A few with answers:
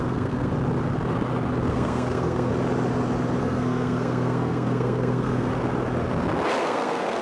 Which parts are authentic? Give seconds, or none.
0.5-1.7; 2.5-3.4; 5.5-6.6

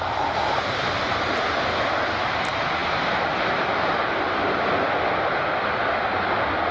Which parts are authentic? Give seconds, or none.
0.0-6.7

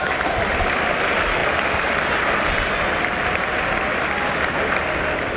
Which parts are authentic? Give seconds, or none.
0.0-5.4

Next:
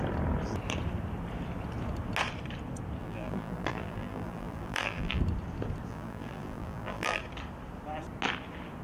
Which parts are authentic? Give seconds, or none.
0.0-3.0; 5.2-5.9; 7.2-8.8

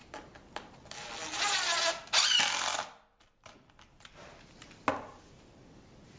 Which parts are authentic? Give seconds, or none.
0.0-6.2

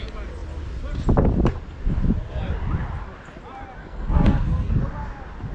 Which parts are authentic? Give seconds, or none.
0.0-3.8; 4.7-5.5

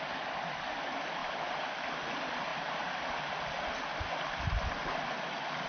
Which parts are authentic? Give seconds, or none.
0.0-2.5; 4.0-5.7

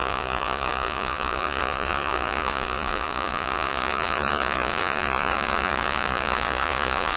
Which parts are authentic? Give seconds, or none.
none